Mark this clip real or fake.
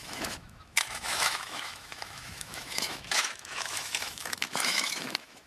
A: fake